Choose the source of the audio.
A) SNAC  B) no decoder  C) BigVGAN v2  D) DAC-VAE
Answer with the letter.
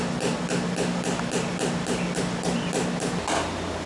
B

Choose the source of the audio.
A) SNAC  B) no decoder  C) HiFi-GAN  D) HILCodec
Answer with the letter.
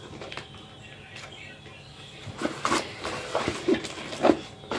B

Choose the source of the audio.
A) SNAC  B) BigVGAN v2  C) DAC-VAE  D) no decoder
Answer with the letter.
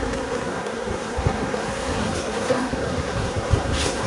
A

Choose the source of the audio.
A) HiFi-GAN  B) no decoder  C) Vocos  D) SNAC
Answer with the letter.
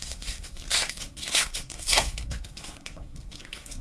D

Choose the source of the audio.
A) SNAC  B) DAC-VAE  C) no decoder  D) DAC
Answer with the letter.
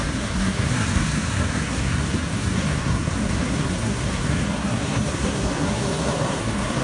A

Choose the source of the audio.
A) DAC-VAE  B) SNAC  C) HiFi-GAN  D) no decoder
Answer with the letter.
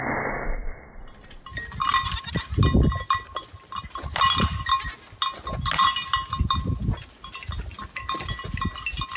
D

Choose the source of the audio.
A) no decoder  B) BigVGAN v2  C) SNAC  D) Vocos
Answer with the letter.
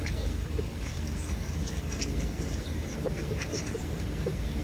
C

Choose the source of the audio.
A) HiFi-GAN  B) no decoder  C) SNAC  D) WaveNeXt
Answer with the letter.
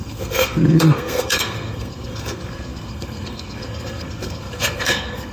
C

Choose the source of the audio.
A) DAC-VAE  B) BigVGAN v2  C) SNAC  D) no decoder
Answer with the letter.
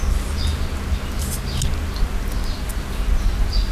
D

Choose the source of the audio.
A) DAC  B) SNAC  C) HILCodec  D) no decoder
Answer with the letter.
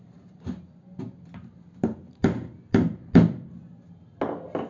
D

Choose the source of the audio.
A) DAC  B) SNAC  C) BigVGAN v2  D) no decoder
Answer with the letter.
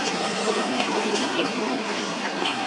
B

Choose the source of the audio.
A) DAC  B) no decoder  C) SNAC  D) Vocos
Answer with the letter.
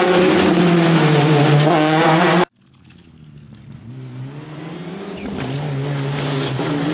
B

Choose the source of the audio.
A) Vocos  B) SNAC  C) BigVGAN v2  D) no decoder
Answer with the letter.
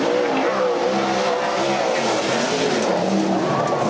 D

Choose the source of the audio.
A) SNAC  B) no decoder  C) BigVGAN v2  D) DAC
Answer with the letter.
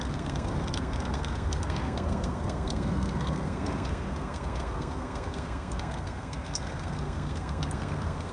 A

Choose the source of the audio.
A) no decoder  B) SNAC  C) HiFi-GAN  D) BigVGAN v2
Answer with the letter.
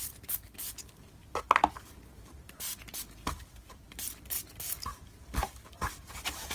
A